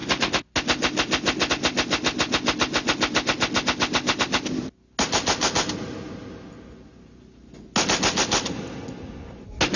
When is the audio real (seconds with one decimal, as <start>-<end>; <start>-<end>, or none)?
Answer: 0.0-9.8